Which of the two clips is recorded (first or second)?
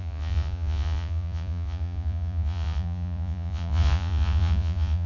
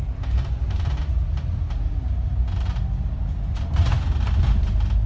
second